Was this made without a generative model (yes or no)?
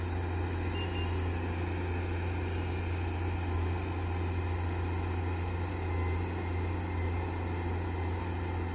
yes